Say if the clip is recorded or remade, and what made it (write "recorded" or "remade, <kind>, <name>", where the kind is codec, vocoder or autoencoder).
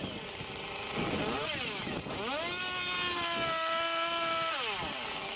recorded